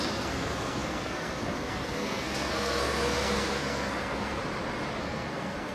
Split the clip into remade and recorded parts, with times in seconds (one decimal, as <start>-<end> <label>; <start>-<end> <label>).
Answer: 0.0-4.4 remade; 4.4-5.0 recorded; 5.0-5.7 remade